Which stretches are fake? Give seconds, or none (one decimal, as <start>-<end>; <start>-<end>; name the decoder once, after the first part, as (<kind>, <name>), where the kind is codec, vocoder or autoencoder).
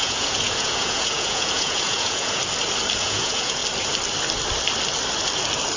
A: 0.0-2.4 (vocoder, Vocos); 3.0-3.6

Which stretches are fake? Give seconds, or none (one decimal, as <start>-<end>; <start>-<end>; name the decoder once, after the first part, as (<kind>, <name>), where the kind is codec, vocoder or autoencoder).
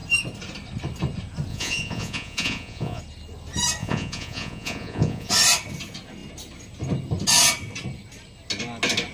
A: 1.5-3.0 (vocoder, Vocos); 3.8-5.3